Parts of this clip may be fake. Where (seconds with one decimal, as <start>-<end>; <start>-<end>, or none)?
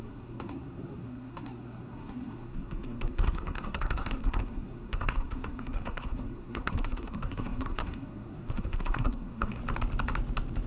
0.0-9.6